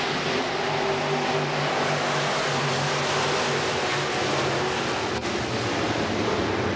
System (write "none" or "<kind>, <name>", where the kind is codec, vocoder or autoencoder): none